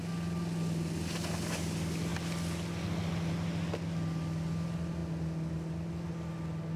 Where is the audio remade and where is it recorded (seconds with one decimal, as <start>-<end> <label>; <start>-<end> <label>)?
0.0-6.8 recorded